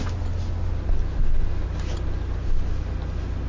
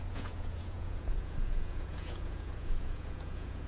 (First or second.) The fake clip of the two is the second